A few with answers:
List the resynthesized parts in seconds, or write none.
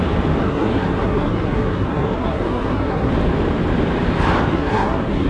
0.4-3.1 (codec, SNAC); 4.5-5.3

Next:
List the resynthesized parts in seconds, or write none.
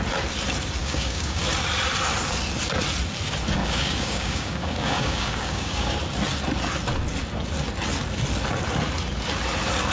0.8-1.4 (codec, DAC); 3.6-5.9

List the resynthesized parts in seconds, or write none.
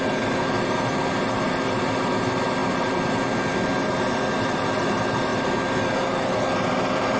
none